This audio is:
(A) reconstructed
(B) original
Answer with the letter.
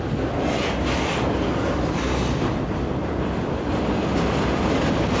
B